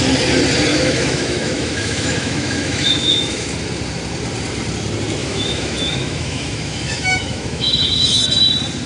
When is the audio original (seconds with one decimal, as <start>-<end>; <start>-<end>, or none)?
0.0-0.7; 3.5-5.2; 8.2-8.9